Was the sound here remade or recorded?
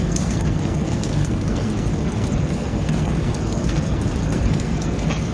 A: remade